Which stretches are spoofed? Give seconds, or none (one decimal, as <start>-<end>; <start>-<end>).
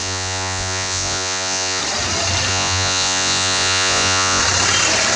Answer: 0.0-1.8; 2.5-4.4